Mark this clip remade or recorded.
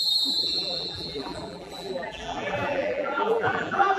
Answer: remade